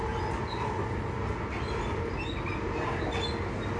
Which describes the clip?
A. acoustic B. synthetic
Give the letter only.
A